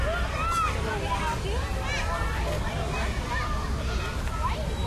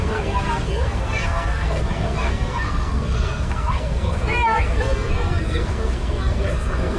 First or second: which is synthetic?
second